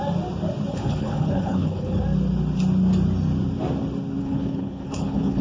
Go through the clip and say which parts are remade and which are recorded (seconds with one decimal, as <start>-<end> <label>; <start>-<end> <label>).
0.0-0.7 recorded; 0.7-2.0 remade; 2.0-4.2 recorded; 4.2-5.4 remade